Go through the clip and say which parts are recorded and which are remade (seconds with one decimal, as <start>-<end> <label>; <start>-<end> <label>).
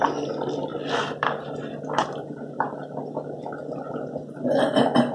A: 0.0-0.7 recorded; 0.7-3.6 remade; 3.6-5.1 recorded